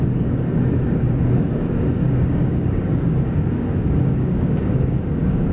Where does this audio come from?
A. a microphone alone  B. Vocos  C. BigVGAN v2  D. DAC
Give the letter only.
D